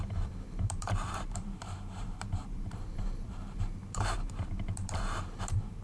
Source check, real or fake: fake